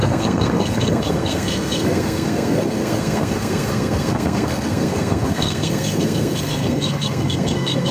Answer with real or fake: fake